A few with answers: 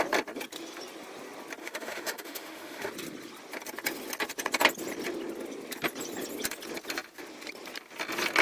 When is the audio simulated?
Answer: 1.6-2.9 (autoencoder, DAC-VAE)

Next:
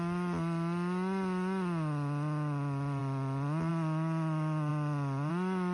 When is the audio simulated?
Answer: none

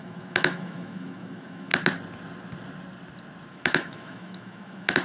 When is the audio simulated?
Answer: 0.0-1.7 (autoencoder, DAC-VAE); 3.5-5.0

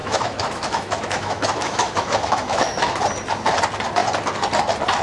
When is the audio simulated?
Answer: 0.0-3.0 (autoencoder, DAC-VAE)

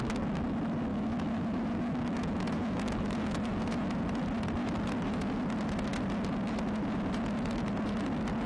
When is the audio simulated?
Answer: 0.9-4.0 (autoencoder, DAC-VAE)

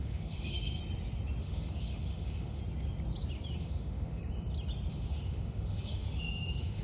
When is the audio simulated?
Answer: 0.0-0.8 (autoencoder, DAC-VAE); 1.4-2.6; 3.6-4.2; 4.9-6.8

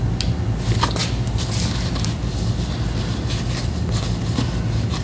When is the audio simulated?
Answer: none

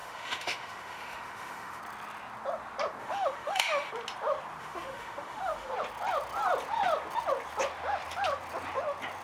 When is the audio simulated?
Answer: 0.0-1.8 (autoencoder, DAC-VAE); 3.0-3.9; 4.6-5.7